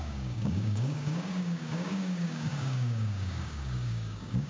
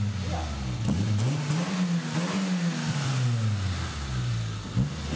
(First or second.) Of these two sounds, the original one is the second